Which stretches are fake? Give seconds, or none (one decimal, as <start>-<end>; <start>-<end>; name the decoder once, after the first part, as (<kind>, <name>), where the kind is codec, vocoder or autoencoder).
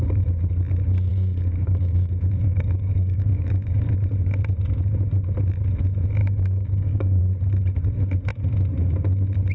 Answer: 0.0-0.5 (codec, DAC); 1.1-4.1; 6.2-7.2